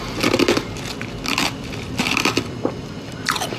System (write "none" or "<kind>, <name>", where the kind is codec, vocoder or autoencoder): vocoder, BigVGAN v2